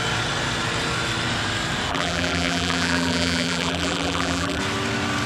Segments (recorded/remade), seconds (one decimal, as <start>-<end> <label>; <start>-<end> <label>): 0.0-1.9 recorded; 1.9-4.6 remade; 4.6-5.3 recorded